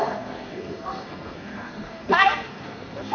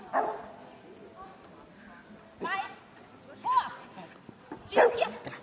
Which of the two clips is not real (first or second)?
first